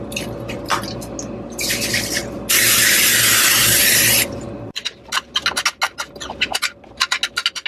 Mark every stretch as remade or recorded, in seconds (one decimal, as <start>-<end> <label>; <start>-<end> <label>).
0.0-3.6 recorded; 3.6-4.5 remade; 4.5-7.7 recorded